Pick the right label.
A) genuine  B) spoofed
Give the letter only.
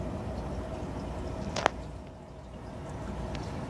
A